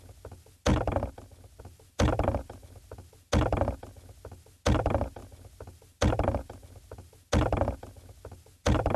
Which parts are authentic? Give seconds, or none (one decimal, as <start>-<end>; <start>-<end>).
0.0-9.0